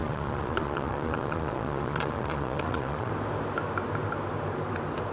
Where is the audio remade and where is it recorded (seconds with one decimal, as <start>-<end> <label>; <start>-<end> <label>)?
0.0-3.1 remade; 3.1-5.1 recorded